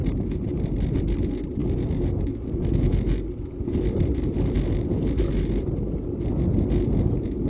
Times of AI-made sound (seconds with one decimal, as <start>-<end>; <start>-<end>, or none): none

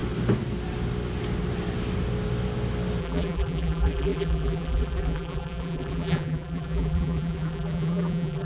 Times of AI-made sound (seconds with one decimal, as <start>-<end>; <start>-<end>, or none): 3.0-8.4

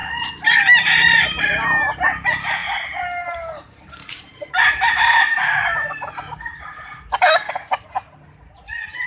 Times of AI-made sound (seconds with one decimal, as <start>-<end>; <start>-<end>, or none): 2.6-7.5

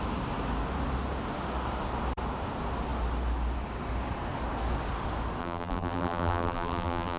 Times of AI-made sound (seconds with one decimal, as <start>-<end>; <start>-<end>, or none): 5.4-7.2

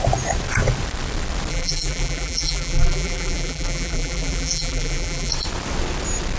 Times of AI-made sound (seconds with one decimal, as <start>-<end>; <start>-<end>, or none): 1.5-5.3

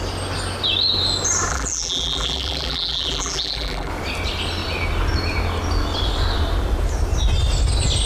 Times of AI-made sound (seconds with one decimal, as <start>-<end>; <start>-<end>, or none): 1.5-3.9

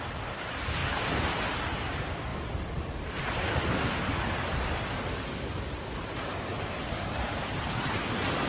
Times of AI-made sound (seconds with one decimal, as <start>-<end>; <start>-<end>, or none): 0.8-1.4; 2.3-3.0